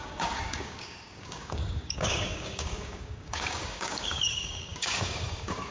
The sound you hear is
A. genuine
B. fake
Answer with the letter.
B